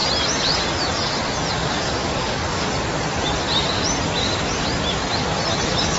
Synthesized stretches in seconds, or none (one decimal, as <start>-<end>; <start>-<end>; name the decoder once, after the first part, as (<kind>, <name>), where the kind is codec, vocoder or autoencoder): 2.0-2.7 (codec, DAC)